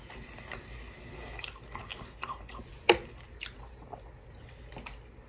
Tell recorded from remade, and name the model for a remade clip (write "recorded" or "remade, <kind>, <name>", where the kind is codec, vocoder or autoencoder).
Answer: recorded